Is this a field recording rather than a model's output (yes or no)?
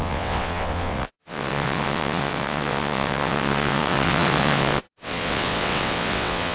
no